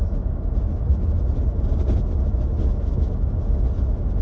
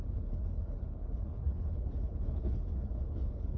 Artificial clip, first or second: second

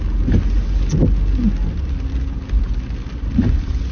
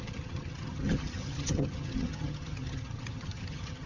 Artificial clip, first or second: second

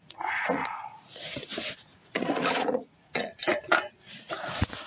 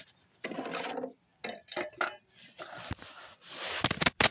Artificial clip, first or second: first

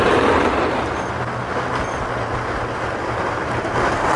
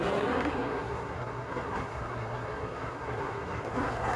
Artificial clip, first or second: second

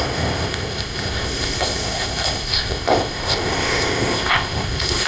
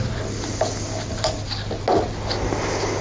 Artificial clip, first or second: first